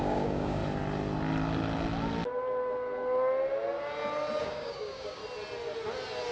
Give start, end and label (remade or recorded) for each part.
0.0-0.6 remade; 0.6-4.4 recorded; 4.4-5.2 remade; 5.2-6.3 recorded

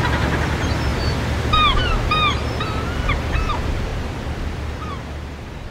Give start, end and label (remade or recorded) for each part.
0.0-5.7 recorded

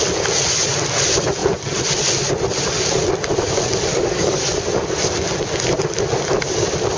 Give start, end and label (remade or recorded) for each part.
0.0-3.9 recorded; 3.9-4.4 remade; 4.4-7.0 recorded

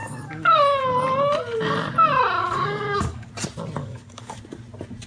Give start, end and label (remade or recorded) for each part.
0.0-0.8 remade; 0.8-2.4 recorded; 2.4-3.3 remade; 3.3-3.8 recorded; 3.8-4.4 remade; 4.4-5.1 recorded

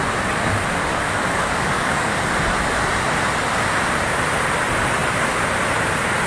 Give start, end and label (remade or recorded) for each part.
0.0-0.9 recorded; 0.9-2.3 remade; 2.3-6.3 recorded

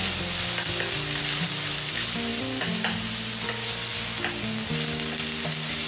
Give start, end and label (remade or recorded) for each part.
0.0-5.9 recorded